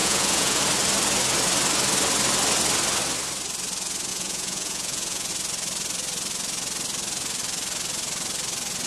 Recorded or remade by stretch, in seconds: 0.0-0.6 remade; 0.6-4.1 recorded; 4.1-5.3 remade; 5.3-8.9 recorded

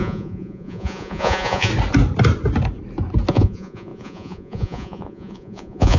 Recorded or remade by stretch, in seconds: 0.0-1.7 remade; 1.7-3.3 recorded; 3.3-6.0 remade

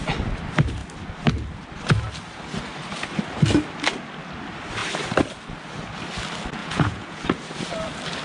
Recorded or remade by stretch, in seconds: 0.0-6.6 recorded; 6.6-7.2 remade; 7.2-8.2 recorded

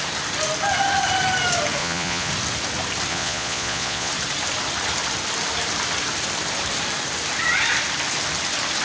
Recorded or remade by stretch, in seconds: 0.0-1.8 recorded; 1.8-2.3 remade; 2.3-3.1 recorded; 3.1-4.1 remade; 4.1-8.8 recorded

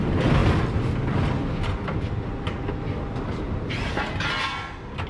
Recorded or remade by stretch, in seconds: 0.0-5.1 recorded

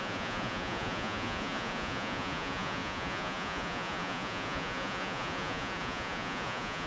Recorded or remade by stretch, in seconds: 0.0-6.9 remade

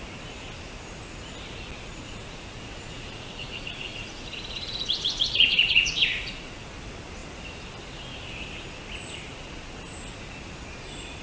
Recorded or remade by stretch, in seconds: 0.0-1.9 recorded; 1.9-6.7 remade; 6.7-9.3 recorded; 9.3-9.8 remade; 9.8-11.2 recorded